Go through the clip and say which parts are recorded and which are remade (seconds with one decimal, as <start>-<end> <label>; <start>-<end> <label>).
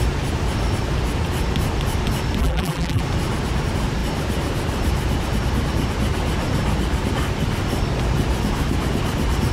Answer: 0.0-2.4 recorded; 2.4-3.0 remade; 3.0-9.5 recorded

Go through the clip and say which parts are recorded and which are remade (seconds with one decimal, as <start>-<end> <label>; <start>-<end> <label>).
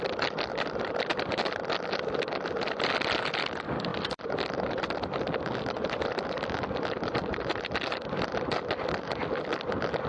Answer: 0.0-3.9 recorded; 3.9-7.9 remade; 7.9-10.1 recorded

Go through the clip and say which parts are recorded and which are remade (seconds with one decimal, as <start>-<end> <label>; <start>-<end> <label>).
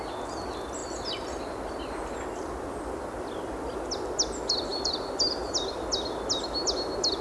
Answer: 0.0-4.7 recorded; 4.7-5.9 remade; 5.9-7.2 recorded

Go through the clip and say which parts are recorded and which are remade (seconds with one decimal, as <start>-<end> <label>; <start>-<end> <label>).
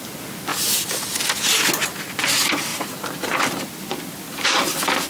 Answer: 0.0-2.7 recorded; 2.7-3.6 remade; 3.6-5.1 recorded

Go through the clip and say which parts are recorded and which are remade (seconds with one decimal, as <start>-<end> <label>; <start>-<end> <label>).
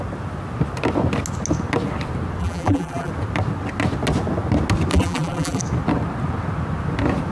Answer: 0.0-2.4 recorded; 2.4-3.1 remade; 3.1-4.9 recorded; 4.9-5.6 remade; 5.6-7.3 recorded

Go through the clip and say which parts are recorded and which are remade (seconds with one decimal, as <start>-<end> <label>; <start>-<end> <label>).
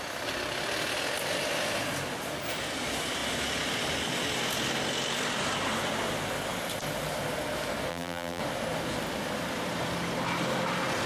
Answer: 0.0-7.9 recorded; 7.9-8.4 remade; 8.4-11.1 recorded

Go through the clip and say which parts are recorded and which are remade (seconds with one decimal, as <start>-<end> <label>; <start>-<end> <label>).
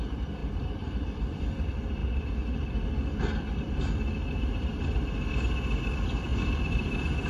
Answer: 0.0-0.4 recorded; 0.4-1.4 remade; 1.4-6.3 recorded; 6.3-7.3 remade